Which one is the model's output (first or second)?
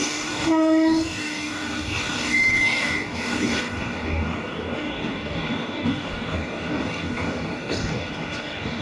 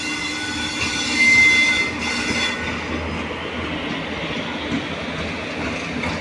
first